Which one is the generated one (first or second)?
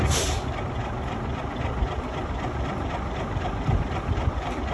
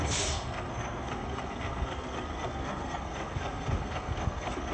second